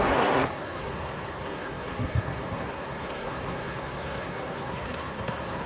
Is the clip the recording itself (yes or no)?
no